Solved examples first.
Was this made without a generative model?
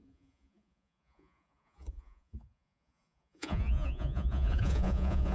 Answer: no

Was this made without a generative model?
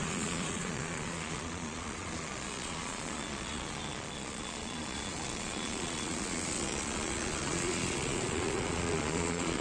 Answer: no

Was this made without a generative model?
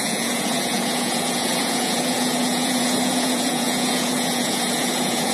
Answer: no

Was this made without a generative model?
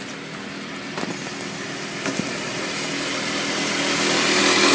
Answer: yes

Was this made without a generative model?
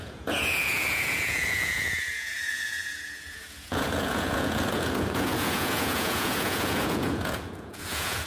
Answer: no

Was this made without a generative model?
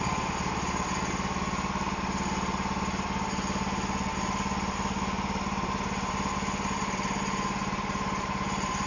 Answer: yes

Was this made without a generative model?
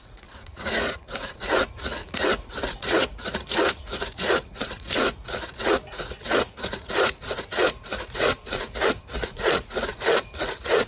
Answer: no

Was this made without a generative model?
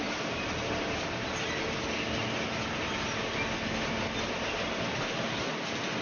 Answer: yes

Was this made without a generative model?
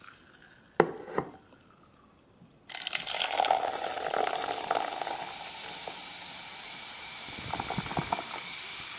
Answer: yes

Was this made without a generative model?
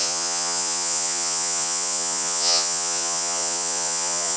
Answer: no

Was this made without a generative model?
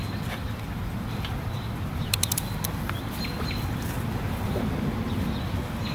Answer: yes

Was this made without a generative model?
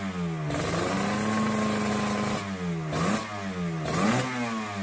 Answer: yes